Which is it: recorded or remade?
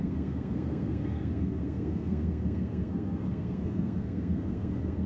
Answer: remade